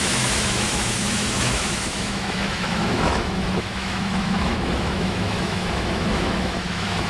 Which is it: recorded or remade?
remade